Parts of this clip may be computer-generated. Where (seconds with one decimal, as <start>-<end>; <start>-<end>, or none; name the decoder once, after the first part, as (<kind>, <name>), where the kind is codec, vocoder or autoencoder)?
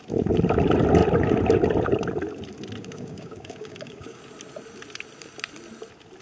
2.8-4.2 (codec, DAC)